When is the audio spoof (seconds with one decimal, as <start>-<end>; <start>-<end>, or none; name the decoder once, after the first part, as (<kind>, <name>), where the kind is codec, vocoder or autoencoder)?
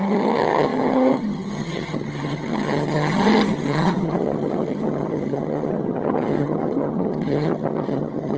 0.0-8.4 (vocoder, HiFi-GAN)